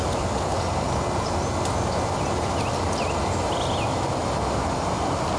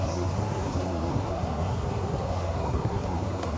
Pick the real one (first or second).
first